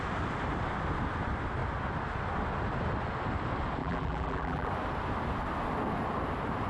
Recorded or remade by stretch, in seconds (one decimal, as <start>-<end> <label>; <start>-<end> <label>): 0.0-3.8 recorded; 3.8-4.7 remade; 4.7-6.7 recorded